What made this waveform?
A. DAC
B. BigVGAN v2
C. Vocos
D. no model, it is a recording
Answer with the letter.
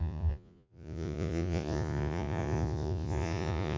C